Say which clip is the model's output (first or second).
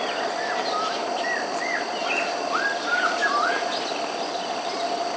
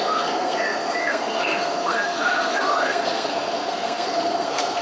second